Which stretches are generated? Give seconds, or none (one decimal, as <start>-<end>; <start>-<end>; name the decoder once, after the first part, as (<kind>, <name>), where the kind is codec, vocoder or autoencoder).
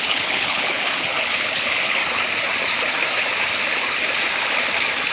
0.0-2.0 (codec, HILCodec)